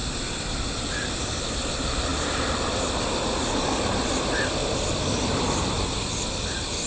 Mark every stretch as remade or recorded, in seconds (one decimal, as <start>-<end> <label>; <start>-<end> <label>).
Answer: 0.0-4.6 recorded; 4.6-6.1 remade; 6.1-6.9 recorded